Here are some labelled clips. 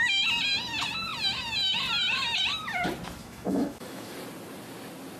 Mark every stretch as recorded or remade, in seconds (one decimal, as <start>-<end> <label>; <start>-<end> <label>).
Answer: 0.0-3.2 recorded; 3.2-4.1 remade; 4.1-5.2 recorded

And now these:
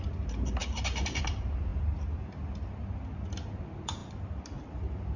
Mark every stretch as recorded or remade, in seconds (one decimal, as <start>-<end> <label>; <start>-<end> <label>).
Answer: 0.0-5.2 recorded

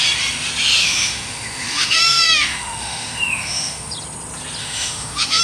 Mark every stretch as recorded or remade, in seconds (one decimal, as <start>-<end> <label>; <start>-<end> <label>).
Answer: 0.0-0.8 recorded; 0.8-3.9 remade; 3.9-4.6 recorded; 4.6-5.4 remade